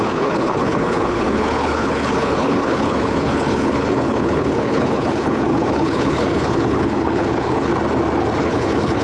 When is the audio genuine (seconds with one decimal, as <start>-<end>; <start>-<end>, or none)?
7.7-8.4